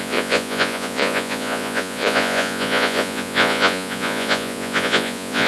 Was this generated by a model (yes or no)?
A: yes